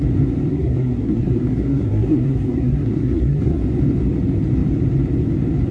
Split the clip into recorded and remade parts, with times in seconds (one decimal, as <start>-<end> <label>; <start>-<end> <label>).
0.0-0.5 recorded; 0.5-3.6 remade; 3.6-5.7 recorded

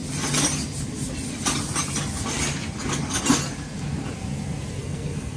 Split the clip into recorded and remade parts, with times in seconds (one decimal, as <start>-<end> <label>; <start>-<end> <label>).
0.0-4.8 recorded; 4.8-5.4 remade

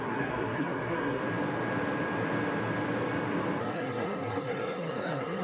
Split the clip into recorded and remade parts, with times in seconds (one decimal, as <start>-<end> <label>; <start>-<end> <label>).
0.0-1.2 remade; 1.2-3.6 recorded; 3.6-5.4 remade

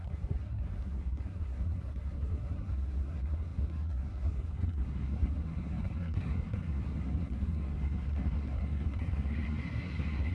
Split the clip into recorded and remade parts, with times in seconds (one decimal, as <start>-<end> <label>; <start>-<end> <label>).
0.0-10.3 remade

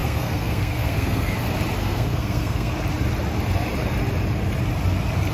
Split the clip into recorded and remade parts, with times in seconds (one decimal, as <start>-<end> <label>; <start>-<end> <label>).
0.0-1.3 remade; 1.3-1.8 recorded; 1.8-2.7 remade; 2.7-5.3 recorded

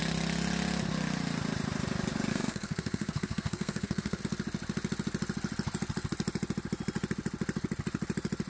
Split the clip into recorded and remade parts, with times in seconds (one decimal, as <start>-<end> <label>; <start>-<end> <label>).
0.0-2.3 recorded; 2.3-4.2 remade; 4.2-8.5 recorded

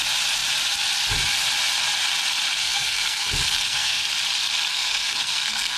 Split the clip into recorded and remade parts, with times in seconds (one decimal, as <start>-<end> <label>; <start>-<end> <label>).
0.0-2.6 recorded; 2.6-4.1 remade; 4.1-4.7 recorded; 4.7-5.8 remade